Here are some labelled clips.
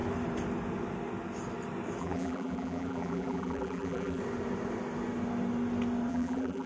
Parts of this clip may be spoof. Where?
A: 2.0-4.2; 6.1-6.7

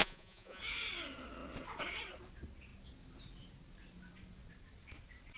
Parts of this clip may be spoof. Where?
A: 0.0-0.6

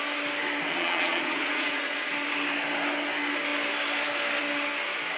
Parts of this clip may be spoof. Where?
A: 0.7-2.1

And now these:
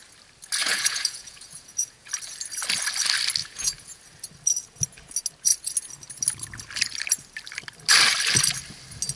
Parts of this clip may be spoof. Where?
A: 0.6-2.1; 3.4-4.0

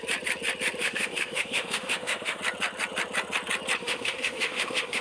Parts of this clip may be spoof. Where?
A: 0.8-2.4; 3.8-5.0